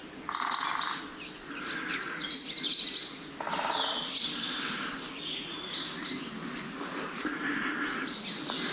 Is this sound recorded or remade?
recorded